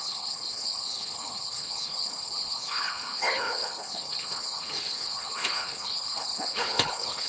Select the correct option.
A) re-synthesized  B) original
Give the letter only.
A